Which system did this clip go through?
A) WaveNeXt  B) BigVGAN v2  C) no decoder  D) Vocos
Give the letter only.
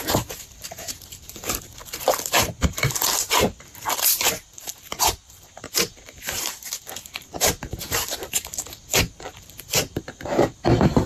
B